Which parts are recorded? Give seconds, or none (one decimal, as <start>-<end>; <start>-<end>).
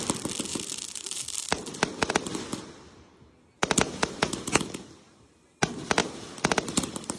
0.0-0.5; 2.1-2.5; 4.6-7.2